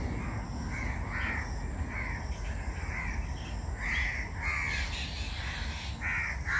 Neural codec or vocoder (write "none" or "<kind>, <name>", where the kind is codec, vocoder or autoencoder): none